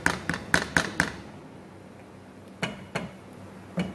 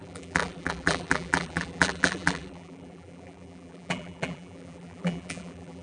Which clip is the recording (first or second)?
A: first